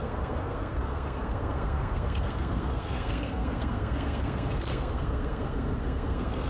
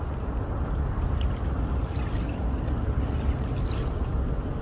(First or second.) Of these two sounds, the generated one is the first